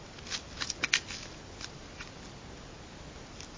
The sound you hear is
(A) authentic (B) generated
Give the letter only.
A